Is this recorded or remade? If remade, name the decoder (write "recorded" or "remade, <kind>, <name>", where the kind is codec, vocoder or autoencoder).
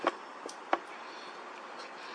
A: recorded